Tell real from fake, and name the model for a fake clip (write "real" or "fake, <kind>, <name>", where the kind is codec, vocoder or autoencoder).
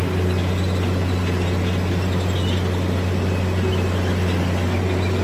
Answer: real